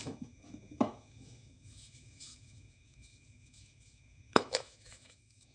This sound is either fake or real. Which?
fake